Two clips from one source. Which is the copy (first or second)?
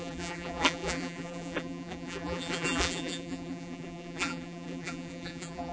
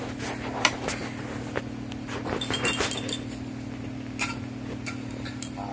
first